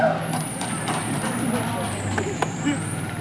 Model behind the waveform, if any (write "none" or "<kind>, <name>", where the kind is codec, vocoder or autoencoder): none